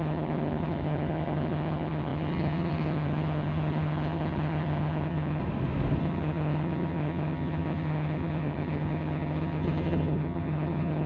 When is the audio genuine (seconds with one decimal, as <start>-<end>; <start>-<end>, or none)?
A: 5.4-6.0